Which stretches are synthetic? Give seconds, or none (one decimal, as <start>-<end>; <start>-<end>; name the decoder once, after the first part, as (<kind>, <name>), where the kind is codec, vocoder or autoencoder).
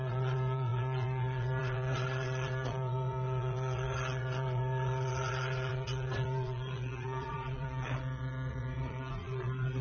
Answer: 0.0-9.8 (vocoder, Vocos)